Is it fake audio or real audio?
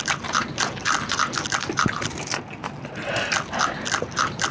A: real